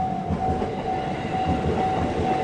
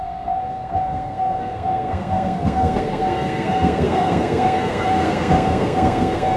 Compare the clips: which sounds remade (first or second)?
second